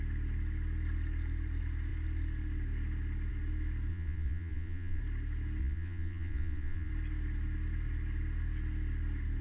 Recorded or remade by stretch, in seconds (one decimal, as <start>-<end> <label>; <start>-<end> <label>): 0.0-3.9 recorded; 3.9-5.0 remade; 5.0-5.6 recorded; 5.6-6.9 remade; 6.9-9.4 recorded